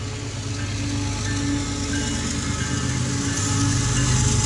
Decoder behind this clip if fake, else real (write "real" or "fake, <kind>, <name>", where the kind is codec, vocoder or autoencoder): real